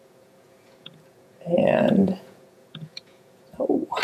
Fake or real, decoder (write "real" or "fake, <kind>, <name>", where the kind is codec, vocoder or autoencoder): fake, vocoder, Vocos